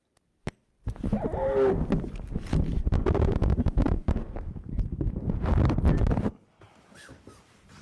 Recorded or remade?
remade